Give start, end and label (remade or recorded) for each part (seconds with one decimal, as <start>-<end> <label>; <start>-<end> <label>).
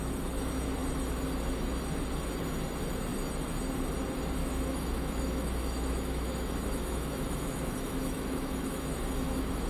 0.0-4.4 recorded; 4.4-9.7 remade